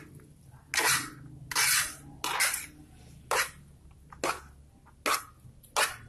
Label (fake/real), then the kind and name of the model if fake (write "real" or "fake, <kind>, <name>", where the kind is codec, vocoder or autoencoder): real